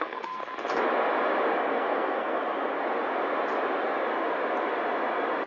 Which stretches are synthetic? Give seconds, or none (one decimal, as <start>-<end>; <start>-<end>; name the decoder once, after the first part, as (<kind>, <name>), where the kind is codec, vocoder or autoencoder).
0.0-0.4 (codec, SNAC); 1.7-2.4